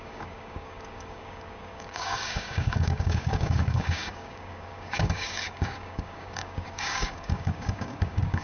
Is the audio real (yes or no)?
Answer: no